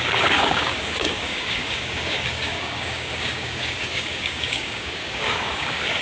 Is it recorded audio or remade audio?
remade